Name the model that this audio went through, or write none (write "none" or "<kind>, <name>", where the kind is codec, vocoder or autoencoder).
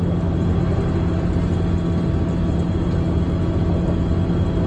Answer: none